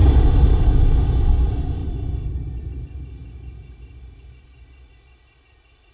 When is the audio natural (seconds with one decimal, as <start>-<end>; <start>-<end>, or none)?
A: 0.0-5.9